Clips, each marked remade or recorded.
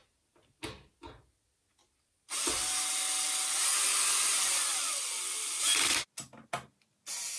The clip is recorded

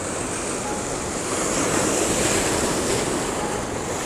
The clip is recorded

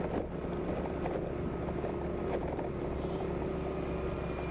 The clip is recorded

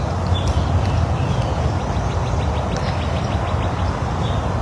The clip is recorded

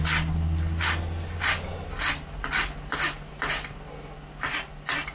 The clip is recorded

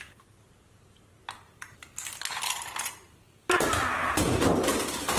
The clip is recorded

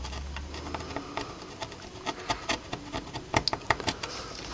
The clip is recorded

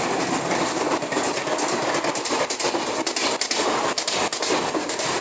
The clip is recorded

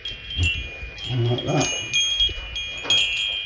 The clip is recorded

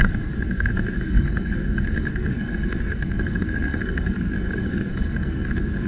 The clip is remade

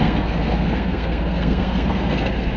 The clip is remade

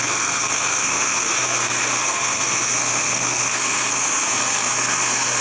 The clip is remade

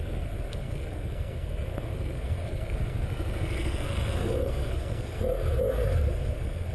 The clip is remade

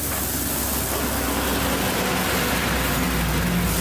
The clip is recorded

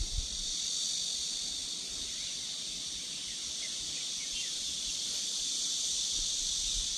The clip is recorded